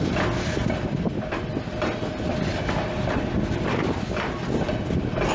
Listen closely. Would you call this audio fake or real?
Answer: real